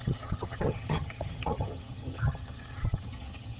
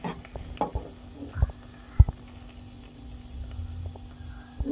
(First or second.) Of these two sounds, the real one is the second